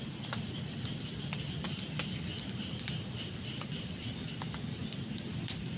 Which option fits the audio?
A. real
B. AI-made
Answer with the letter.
B